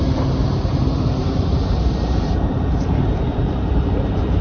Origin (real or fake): fake